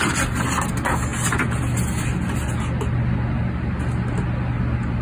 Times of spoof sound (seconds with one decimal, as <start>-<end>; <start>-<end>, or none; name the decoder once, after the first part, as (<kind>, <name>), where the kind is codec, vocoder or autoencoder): none